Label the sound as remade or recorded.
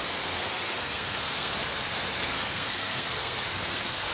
remade